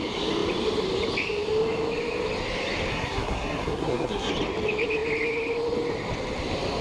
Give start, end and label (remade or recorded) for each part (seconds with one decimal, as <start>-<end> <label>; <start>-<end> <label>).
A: 0.0-2.9 recorded; 2.9-4.3 remade; 4.3-6.8 recorded